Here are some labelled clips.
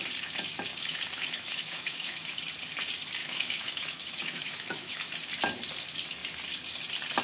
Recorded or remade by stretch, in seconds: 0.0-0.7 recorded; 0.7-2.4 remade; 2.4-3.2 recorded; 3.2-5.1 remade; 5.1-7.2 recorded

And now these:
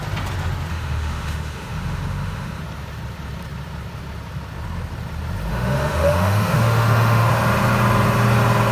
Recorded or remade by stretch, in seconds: 0.0-0.7 recorded; 0.7-2.6 remade; 2.6-5.5 recorded; 5.5-7.3 remade; 7.3-8.7 recorded